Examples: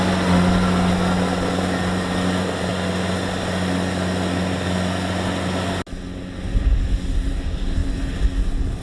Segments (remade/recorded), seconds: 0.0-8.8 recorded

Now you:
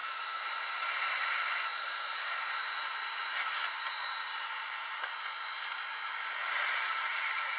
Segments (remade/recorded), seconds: 0.0-1.0 remade; 1.0-1.7 recorded; 1.7-5.1 remade; 5.1-6.4 recorded; 6.4-7.6 remade

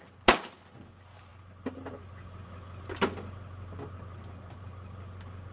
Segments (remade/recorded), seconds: 0.0-5.5 recorded

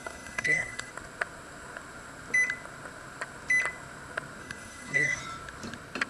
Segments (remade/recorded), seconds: 0.0-0.9 remade; 0.9-4.4 recorded; 4.4-5.2 remade; 5.2-6.1 recorded

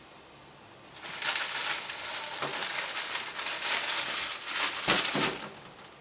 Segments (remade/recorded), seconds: 0.0-6.0 recorded